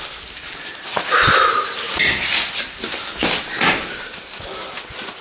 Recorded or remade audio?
recorded